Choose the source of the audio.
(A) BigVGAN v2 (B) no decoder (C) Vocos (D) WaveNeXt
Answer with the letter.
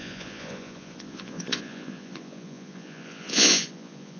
C